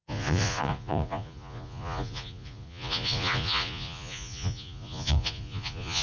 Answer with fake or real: fake